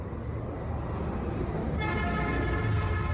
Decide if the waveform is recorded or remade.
recorded